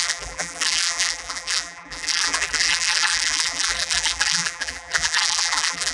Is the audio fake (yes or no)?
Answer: yes